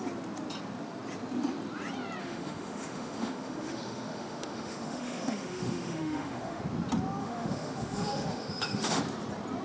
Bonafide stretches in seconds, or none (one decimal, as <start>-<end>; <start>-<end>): 0.0-2.2; 6.6-7.2; 9.0-9.6